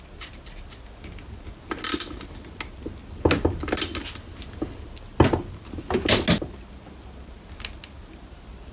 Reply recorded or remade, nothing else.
recorded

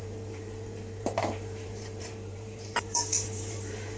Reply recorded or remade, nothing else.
remade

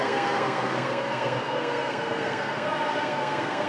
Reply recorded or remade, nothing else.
remade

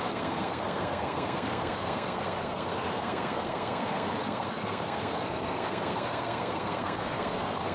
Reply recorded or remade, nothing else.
remade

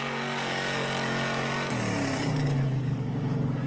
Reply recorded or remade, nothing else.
remade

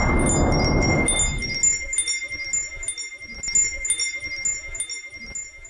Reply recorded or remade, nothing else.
recorded